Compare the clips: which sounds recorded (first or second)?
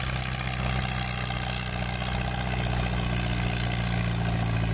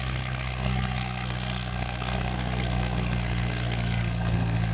first